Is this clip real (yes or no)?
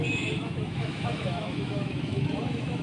no